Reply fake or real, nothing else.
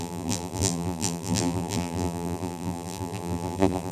fake